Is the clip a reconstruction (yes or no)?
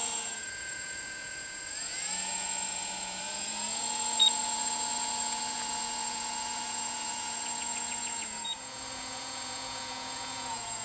yes